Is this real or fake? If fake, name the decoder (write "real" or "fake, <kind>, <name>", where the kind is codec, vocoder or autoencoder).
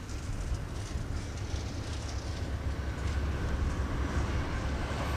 real